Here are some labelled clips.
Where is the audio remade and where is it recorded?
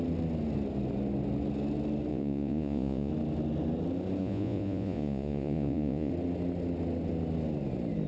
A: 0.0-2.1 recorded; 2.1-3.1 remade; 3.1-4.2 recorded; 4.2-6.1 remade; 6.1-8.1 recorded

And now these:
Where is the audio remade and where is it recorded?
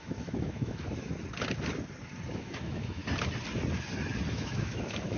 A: 0.0-1.1 remade; 1.1-2.3 recorded; 2.3-3.0 remade; 3.0-4.3 recorded; 4.3-5.2 remade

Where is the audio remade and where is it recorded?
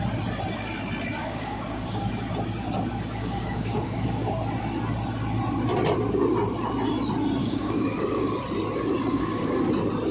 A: 0.0-1.2 recorded; 1.2-2.1 remade; 2.1-3.2 recorded; 3.2-4.3 remade; 4.3-7.4 recorded; 7.4-8.4 remade; 8.4-9.1 recorded; 9.1-9.7 remade; 9.7-10.1 recorded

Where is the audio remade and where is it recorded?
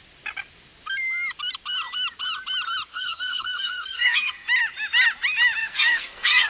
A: 0.0-2.9 recorded; 2.9-4.3 remade; 4.3-5.6 recorded; 5.6-6.5 remade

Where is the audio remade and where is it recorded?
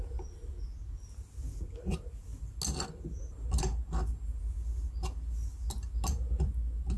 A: 0.0-7.0 recorded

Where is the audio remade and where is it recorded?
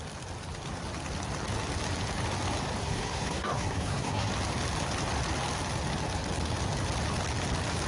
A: 0.0-2.8 recorded; 2.8-4.3 remade; 4.3-7.9 recorded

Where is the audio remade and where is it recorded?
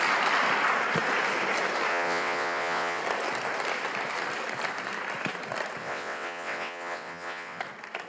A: 0.0-1.9 recorded; 1.9-3.0 remade; 3.0-5.8 recorded; 5.8-7.6 remade; 7.6-8.1 recorded